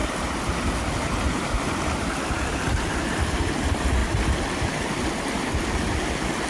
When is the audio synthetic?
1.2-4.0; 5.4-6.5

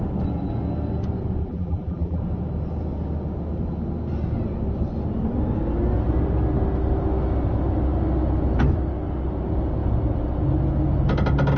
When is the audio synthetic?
1.4-2.2

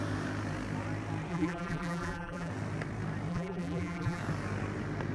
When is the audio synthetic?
1.3-2.5; 3.3-4.2

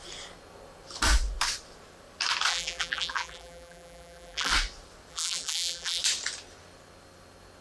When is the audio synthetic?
2.5-4.5; 5.1-6.0

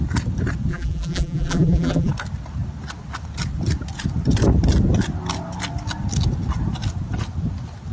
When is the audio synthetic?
0.7-2.1

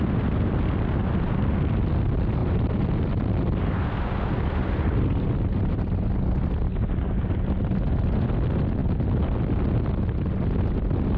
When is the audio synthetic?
2.4-3.6